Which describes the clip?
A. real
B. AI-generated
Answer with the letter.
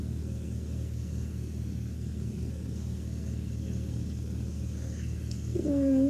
B